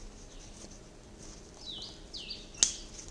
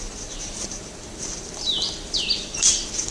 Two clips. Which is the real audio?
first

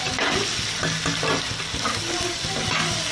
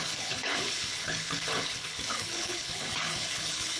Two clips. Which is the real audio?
first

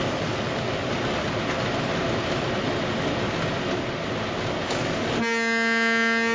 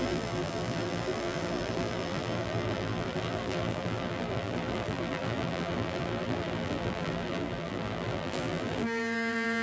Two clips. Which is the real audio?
first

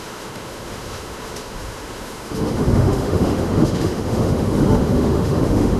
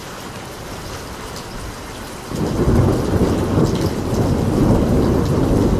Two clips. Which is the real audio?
second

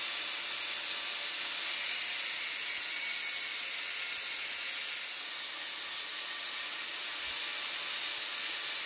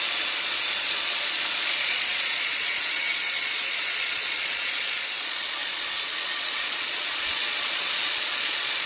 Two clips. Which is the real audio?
first